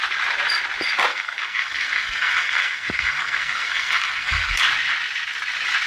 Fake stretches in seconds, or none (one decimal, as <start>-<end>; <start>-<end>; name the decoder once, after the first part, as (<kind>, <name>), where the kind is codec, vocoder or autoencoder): 1.1-4.6 (codec, SNAC)